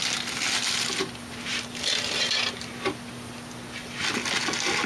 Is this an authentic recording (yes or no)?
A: yes